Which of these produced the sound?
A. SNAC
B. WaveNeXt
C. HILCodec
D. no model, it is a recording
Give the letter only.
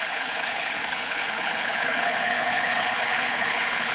C